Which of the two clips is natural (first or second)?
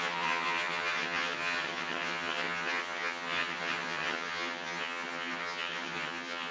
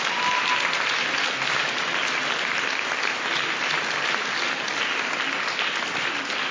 second